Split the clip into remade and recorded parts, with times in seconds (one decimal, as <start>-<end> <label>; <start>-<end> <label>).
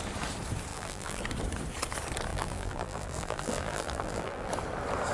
0.0-0.7 recorded; 0.7-1.2 remade; 1.2-2.3 recorded; 2.3-4.5 remade; 4.5-5.1 recorded